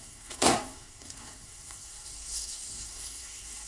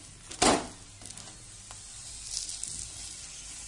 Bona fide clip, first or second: second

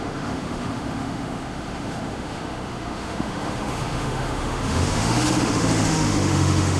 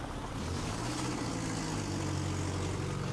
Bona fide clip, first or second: second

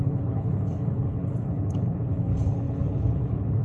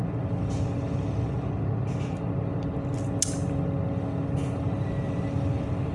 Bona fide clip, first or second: second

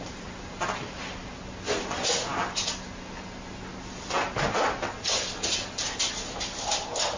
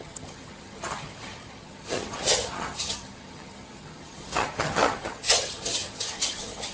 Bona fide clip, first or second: first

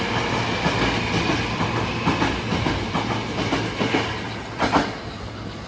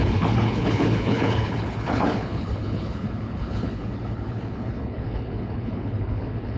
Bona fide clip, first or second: first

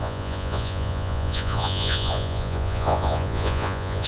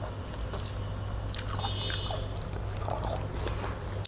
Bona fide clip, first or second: second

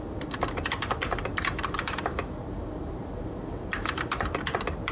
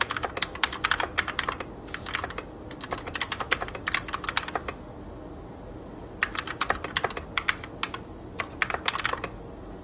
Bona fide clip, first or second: second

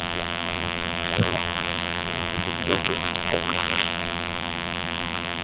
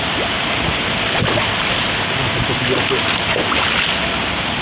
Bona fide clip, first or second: second